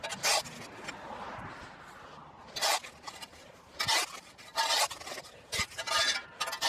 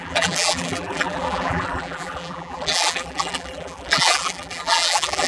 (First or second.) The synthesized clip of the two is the second